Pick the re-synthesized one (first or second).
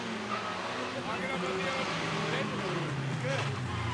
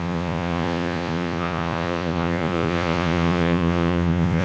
second